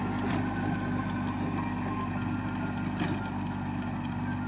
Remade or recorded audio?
recorded